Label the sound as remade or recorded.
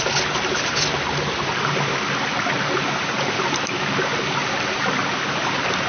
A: recorded